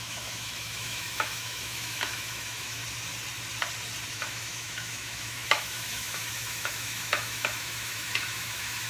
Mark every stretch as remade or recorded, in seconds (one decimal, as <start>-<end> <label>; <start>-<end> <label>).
0.0-2.8 remade; 2.8-4.1 recorded; 4.1-8.9 remade